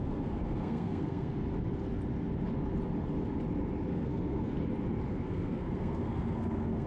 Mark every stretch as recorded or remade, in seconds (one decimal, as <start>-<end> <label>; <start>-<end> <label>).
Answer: 0.0-1.4 remade; 1.4-3.9 recorded; 3.9-4.5 remade; 4.5-5.1 recorded; 5.1-6.9 remade